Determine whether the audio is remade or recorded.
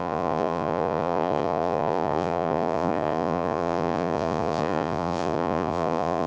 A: remade